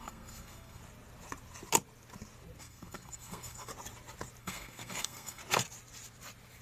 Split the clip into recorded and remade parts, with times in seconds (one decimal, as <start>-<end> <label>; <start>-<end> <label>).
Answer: 0.0-0.8 remade; 0.8-2.6 recorded; 2.6-3.7 remade; 3.7-4.4 recorded; 4.4-5.4 remade; 5.4-6.6 recorded